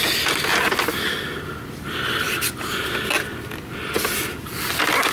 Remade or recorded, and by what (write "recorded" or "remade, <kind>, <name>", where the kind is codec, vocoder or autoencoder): recorded